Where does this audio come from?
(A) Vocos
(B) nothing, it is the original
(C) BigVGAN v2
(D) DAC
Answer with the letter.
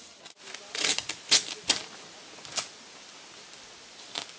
B